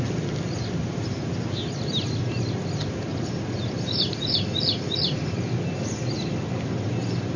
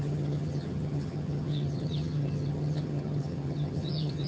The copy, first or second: second